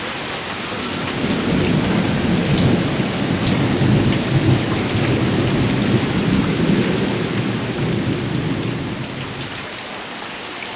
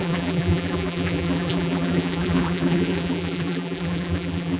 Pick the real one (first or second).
first